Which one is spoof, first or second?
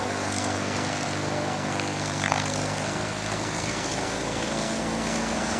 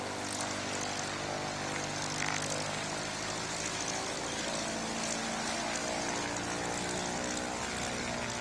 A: first